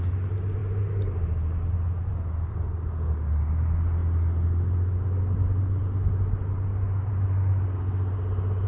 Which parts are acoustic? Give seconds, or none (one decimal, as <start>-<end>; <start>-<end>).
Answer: 0.0-8.7